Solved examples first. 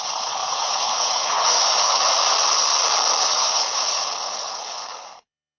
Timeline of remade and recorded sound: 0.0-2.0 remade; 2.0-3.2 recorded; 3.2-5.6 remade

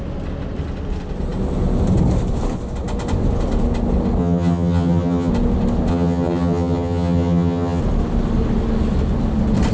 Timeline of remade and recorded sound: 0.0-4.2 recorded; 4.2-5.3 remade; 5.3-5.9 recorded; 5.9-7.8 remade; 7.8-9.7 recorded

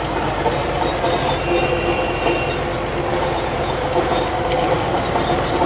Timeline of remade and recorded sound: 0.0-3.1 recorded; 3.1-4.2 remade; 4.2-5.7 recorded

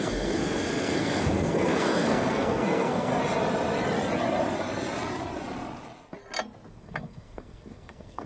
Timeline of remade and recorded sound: 0.0-3.1 remade; 3.1-6.7 recorded; 6.7-8.3 remade

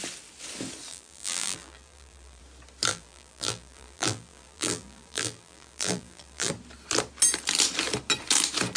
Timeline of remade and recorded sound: 0.0-0.9 recorded; 0.9-2.4 remade; 2.4-2.9 recorded; 2.9-6.5 remade; 6.5-8.8 recorded

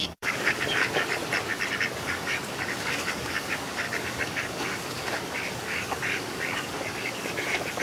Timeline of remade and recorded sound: 0.0-1.2 remade; 1.2-2.0 recorded; 2.0-7.8 remade